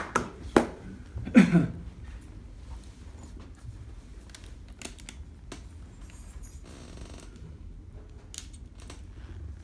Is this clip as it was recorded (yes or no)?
yes